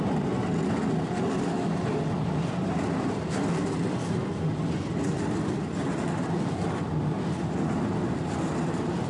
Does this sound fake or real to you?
real